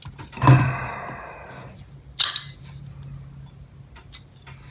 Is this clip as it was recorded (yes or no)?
yes